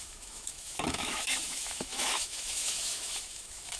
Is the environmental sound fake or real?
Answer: fake